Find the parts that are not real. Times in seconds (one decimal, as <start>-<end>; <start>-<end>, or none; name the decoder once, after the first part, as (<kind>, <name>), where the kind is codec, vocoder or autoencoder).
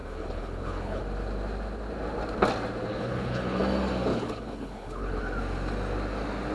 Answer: 0.0-1.0 (codec, HILCodec); 2.9-3.6; 4.1-5.2